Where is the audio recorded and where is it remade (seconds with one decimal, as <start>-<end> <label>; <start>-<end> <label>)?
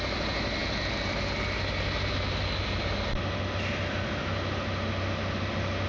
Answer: 0.0-5.9 recorded